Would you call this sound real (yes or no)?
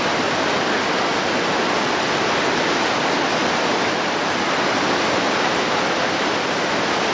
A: yes